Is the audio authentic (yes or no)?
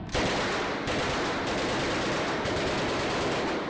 yes